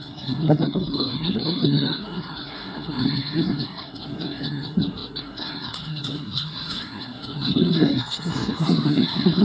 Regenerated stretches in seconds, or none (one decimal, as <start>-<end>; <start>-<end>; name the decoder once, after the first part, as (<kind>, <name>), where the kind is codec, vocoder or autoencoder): 0.0-9.4 (codec, SNAC)